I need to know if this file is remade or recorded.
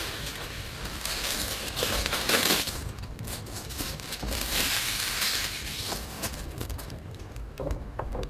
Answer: remade